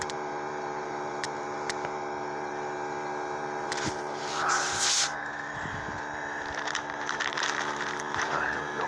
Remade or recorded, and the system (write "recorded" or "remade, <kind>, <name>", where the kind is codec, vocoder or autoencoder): remade, vocoder, BigVGAN v2